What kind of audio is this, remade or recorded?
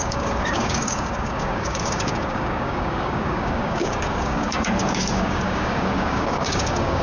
remade